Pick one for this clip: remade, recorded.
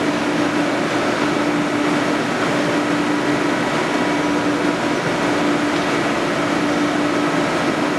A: recorded